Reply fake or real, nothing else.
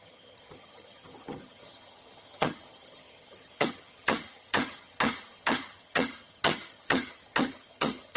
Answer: fake